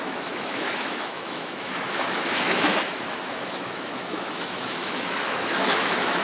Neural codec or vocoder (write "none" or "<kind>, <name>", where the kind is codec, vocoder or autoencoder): autoencoder, DAC-VAE